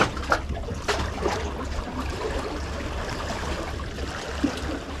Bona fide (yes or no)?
yes